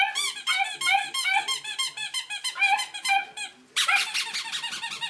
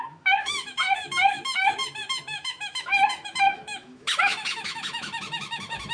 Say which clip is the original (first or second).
first